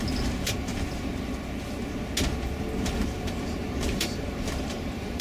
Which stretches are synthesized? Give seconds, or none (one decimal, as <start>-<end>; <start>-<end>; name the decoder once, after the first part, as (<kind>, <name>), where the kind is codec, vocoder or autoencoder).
0.0-0.7 (vocoder, BigVGAN v2); 3.0-5.2